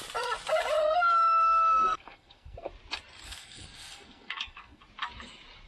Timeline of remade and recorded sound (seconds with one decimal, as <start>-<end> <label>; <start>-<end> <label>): 0.0-0.8 recorded; 0.8-2.7 remade; 2.7-3.2 recorded; 3.2-4.8 remade; 4.8-5.7 recorded